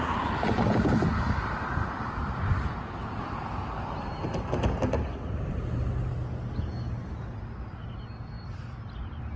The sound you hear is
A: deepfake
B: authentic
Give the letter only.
B